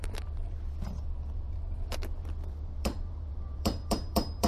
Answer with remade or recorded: remade